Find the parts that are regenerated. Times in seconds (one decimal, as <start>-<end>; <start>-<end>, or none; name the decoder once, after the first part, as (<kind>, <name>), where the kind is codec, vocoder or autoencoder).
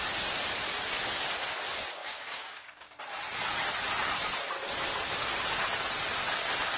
2.0-3.0 (codec, DAC)